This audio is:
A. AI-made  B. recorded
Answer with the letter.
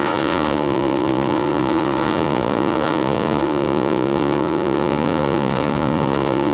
A